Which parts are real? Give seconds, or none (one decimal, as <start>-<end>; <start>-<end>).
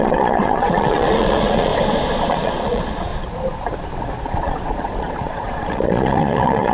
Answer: 1.7-2.3; 3.1-4.2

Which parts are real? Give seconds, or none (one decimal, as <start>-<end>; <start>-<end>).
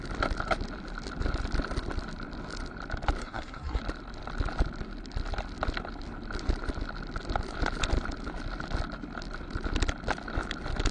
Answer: 0.0-3.2; 3.8-10.9